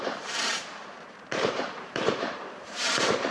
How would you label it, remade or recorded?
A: remade